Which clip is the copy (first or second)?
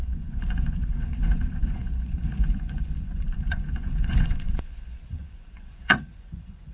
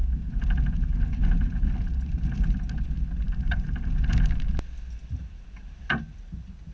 first